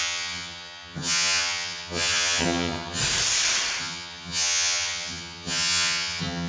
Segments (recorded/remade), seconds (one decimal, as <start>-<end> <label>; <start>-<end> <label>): 0.0-3.0 remade; 3.0-3.8 recorded; 3.8-6.5 remade